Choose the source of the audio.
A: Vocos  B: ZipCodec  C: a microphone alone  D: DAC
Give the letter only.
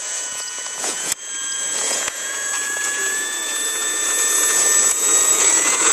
A